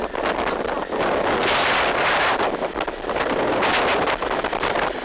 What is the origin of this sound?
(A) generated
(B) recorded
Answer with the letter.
B